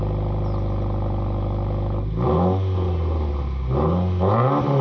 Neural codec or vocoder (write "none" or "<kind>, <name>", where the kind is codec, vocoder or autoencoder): none